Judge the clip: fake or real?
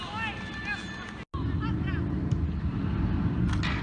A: real